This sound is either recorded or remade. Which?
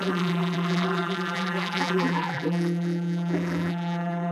remade